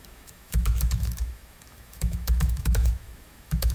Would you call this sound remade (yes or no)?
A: yes